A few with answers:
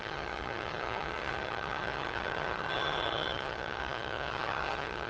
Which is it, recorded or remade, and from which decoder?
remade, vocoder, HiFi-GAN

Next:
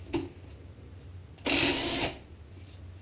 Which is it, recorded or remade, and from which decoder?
recorded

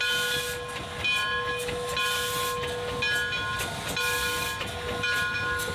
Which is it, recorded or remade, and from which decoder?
recorded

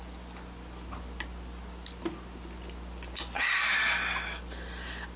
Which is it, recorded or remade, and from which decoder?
recorded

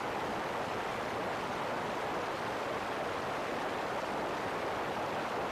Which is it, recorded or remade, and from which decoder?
recorded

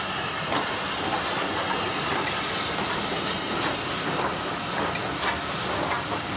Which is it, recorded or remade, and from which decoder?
recorded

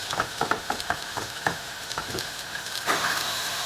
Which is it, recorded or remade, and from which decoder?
remade, autoencoder, DAC-VAE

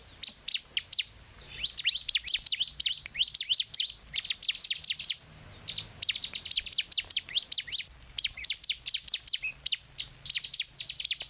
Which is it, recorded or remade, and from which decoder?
recorded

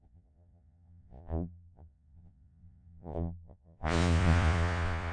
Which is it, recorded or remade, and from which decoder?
remade, vocoder, Vocos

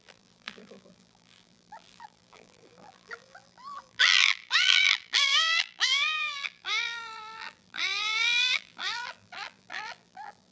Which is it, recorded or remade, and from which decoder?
remade, vocoder, BigVGAN v2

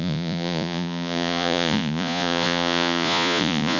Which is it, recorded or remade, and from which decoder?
remade, vocoder, Vocos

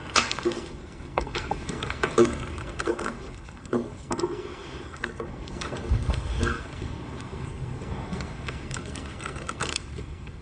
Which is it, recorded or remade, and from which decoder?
remade, codec, SNAC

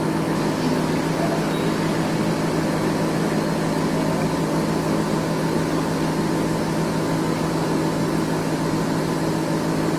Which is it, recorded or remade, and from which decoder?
recorded